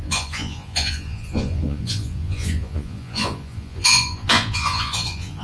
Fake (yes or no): yes